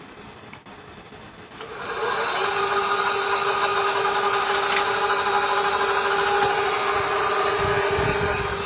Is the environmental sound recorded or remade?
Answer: recorded